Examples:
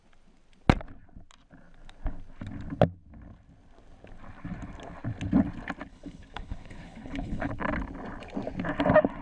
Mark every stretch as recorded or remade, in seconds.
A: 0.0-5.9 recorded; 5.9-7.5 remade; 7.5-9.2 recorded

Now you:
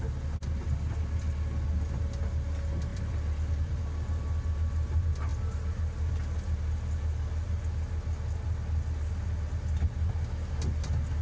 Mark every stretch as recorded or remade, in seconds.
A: 0.0-2.9 recorded; 2.9-3.8 remade; 3.8-11.2 recorded

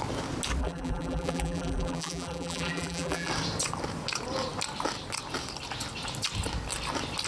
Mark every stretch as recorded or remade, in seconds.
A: 0.0-0.6 recorded; 0.6-3.3 remade; 3.3-7.3 recorded

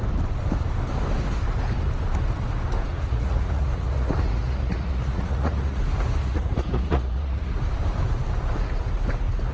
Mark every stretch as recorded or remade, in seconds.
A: 0.0-2.9 recorded; 2.9-5.8 remade; 5.8-6.2 recorded; 6.2-7.5 remade; 7.5-9.5 recorded